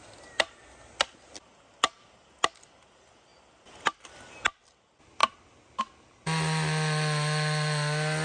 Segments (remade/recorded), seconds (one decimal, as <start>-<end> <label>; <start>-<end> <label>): 0.0-8.2 recorded